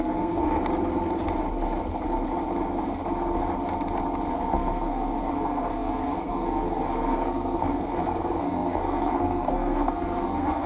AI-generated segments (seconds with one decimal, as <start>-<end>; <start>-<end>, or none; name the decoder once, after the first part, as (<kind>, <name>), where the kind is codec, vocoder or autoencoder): 0.0-0.6 (codec, SNAC); 4.3-10.7